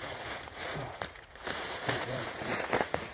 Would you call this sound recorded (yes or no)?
no